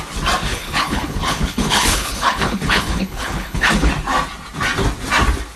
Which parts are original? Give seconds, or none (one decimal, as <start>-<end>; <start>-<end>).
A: 0.0-0.5; 3.9-5.6